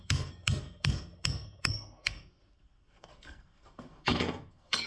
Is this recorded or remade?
remade